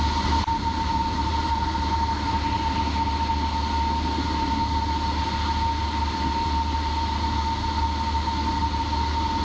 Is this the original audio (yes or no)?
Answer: yes